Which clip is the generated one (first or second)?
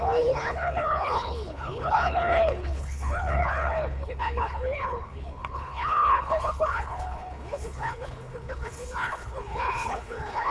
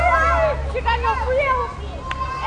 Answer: first